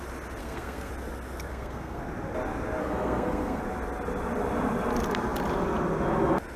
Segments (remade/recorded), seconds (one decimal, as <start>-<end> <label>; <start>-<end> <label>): 0.0-0.4 recorded; 0.4-0.9 remade; 0.9-1.5 recorded; 1.5-2.0 remade; 2.0-2.8 recorded; 2.8-3.6 remade; 3.6-6.6 recorded